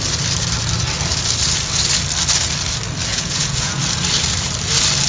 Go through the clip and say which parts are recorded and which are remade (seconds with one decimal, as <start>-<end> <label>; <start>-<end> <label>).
0.0-3.1 recorded; 3.1-3.8 remade; 3.8-5.1 recorded